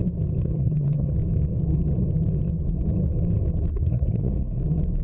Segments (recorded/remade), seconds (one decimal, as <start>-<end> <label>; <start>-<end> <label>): 0.0-0.4 recorded; 0.4-1.1 remade; 1.1-3.7 recorded; 3.7-4.6 remade; 4.6-5.0 recorded